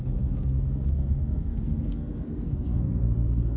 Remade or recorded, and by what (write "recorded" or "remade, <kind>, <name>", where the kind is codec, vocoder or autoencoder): remade, codec, SNAC